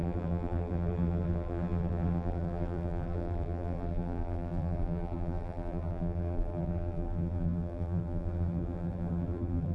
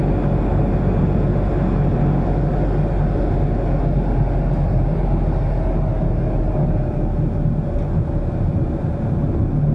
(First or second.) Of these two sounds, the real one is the second